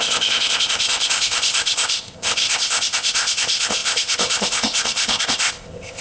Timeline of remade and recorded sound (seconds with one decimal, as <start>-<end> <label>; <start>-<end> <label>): 0.0-6.0 remade